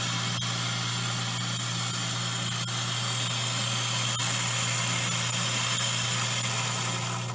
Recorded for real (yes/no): yes